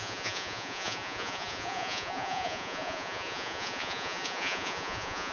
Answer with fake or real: fake